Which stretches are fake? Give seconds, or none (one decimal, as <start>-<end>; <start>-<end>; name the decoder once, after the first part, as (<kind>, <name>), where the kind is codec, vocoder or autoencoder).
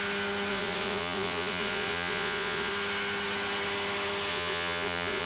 0.5-2.7 (vocoder, Vocos); 4.3-5.3